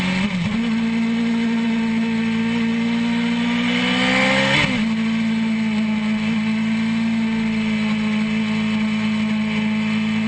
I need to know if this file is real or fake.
real